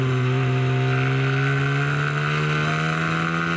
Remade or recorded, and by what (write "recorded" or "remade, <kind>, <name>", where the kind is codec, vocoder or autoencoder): recorded